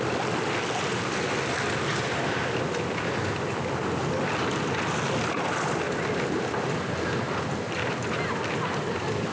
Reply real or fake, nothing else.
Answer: real